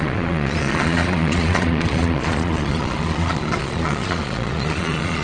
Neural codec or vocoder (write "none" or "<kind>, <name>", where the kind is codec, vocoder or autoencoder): vocoder, Vocos